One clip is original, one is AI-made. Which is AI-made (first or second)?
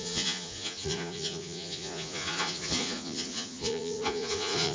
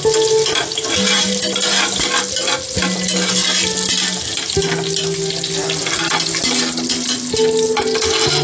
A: first